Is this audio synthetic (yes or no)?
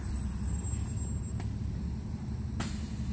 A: no